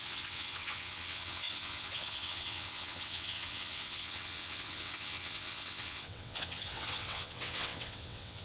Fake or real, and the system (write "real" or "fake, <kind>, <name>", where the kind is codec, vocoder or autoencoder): fake, vocoder, WaveNeXt